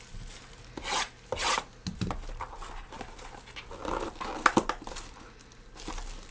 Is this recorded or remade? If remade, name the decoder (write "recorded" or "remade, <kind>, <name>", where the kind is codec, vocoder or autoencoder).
recorded